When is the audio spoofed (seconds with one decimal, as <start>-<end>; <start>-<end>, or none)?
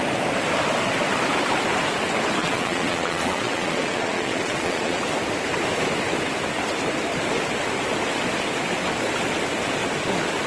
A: 2.4-5.0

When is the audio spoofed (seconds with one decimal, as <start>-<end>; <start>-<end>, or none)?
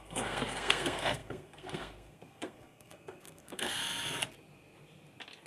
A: 0.0-3.8